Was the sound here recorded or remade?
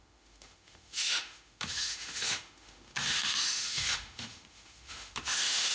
remade